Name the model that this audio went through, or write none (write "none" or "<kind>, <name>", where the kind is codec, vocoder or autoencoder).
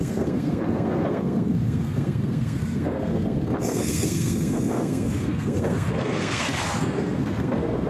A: codec, SNAC